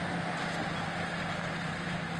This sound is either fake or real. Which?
real